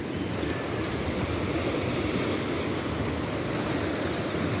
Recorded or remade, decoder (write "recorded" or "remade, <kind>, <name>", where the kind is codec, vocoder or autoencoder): recorded